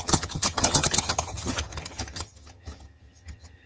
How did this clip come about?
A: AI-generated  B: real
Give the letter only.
A